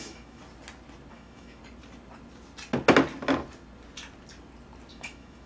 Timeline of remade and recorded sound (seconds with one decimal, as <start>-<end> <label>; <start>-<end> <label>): 0.0-0.4 remade; 0.4-1.1 recorded; 1.1-1.6 remade; 1.6-4.9 recorded; 4.9-5.5 remade